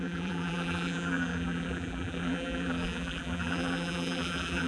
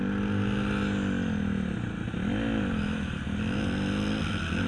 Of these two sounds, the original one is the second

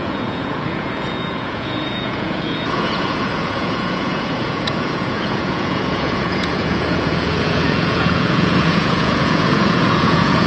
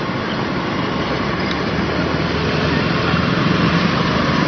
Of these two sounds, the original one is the second